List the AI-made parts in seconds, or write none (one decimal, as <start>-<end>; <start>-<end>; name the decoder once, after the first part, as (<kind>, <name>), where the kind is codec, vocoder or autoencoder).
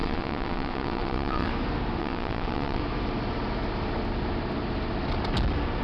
0.0-1.5 (vocoder, WaveNeXt); 2.0-2.8